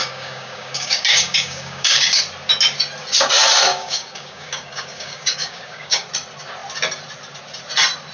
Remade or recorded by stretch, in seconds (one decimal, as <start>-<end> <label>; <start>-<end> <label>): 0.0-2.2 remade; 2.2-3.7 recorded; 3.7-6.1 remade; 6.1-8.1 recorded